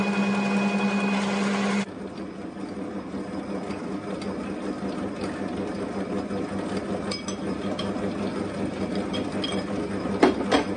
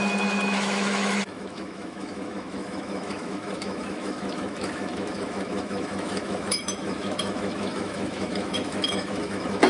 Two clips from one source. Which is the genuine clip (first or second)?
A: first